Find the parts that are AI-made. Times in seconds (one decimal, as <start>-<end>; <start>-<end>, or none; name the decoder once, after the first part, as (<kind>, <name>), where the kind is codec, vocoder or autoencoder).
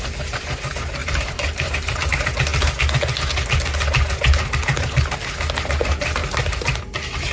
1.0-2.1 (vocoder, BigVGAN v2); 6.2-6.8